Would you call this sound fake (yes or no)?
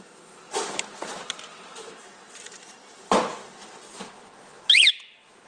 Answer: no